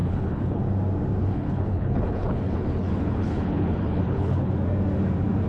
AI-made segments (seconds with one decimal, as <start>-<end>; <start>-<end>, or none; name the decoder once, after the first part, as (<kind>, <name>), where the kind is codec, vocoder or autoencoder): 0.0-0.6 (codec, HILCodec); 1.2-4.5